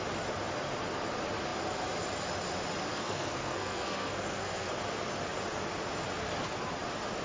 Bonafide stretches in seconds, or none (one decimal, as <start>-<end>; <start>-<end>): 0.0-2.9; 4.7-7.2